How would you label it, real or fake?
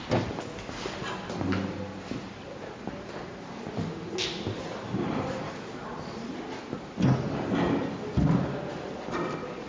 real